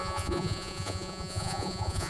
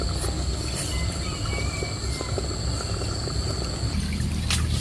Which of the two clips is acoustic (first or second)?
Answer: second